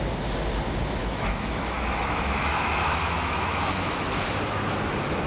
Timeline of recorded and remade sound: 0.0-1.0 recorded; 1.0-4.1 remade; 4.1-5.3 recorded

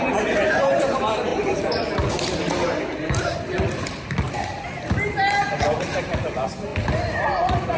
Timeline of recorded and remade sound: 0.0-1.3 recorded; 1.3-4.3 remade; 4.3-7.8 recorded

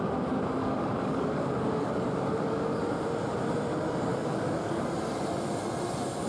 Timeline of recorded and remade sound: 0.0-0.6 recorded; 0.6-2.8 remade; 2.8-4.1 recorded; 4.1-4.8 remade; 4.8-6.3 recorded

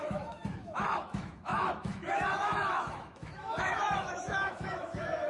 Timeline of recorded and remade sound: 0.0-5.3 remade